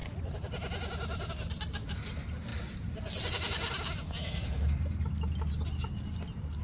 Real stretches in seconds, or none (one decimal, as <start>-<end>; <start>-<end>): 0.0-6.6